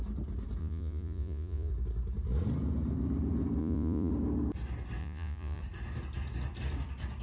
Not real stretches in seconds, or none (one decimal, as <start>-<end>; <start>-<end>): 0.6-1.7; 3.6-4.1; 5.0-5.6